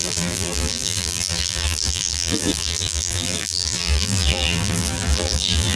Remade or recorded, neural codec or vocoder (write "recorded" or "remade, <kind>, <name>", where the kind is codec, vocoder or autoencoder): remade, vocoder, BigVGAN v2